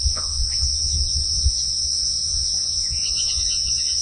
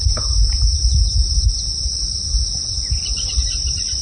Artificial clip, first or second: first